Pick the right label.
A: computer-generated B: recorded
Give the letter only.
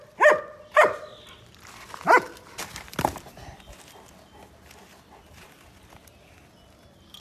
B